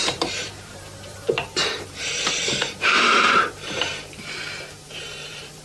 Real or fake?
fake